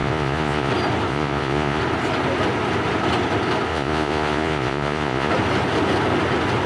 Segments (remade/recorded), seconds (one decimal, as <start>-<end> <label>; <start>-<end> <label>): 0.0-0.7 remade; 0.7-1.1 recorded; 1.1-1.8 remade; 1.8-3.7 recorded; 3.7-5.3 remade; 5.3-6.7 recorded